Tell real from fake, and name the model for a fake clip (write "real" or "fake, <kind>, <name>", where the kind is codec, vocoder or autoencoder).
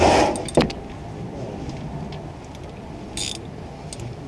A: real